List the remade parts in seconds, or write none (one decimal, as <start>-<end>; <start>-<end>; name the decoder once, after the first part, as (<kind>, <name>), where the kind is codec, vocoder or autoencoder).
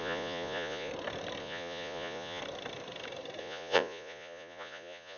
0.0-0.9 (vocoder, Vocos); 1.4-2.4; 3.4-5.2